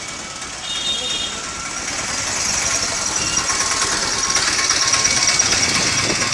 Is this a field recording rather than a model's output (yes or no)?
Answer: yes